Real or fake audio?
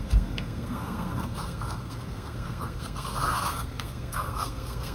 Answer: fake